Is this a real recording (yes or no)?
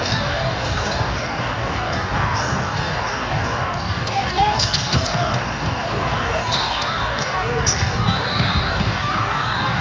no